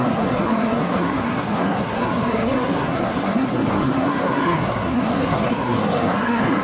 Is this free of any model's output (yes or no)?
no